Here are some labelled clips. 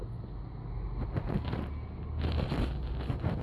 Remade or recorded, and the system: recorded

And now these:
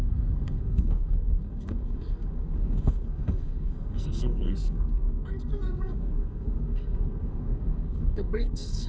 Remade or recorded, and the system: remade, codec, SNAC